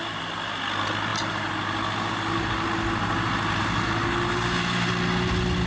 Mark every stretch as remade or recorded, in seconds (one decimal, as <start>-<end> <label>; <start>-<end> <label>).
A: 0.0-5.7 recorded